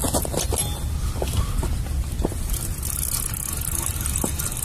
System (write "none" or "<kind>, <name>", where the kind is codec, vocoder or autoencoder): none